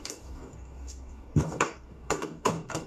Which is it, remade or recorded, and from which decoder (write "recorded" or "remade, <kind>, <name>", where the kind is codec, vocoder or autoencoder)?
remade, codec, DAC